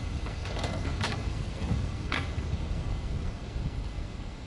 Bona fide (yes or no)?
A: no